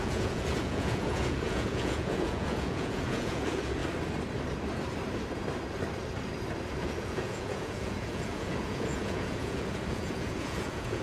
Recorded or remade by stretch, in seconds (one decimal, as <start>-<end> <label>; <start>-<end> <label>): 0.0-3.8 remade; 3.8-6.8 recorded; 6.8-11.0 remade